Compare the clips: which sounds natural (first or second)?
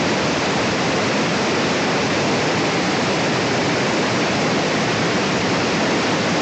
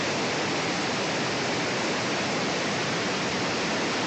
second